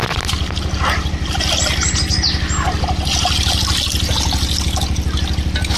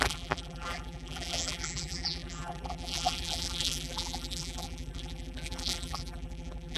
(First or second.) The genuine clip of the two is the first